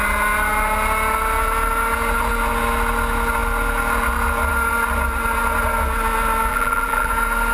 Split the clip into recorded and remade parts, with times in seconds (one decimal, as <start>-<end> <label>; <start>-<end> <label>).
0.0-6.5 recorded; 6.5-7.1 remade; 7.1-7.5 recorded